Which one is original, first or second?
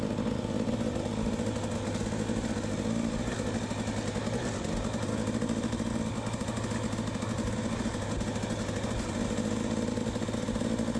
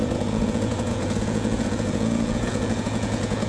first